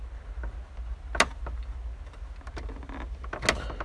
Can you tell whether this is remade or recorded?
recorded